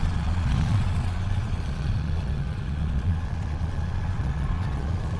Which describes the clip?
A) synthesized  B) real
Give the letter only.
A